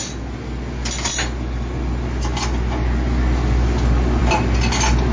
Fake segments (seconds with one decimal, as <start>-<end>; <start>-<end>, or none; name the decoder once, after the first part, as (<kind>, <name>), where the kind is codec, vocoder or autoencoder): none